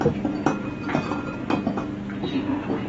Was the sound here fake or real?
real